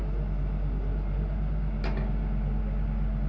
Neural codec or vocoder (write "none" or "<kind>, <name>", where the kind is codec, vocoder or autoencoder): none